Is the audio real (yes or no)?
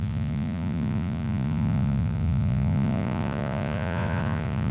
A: no